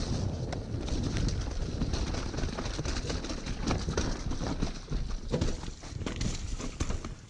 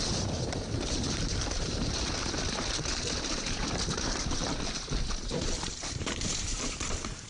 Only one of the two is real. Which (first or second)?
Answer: first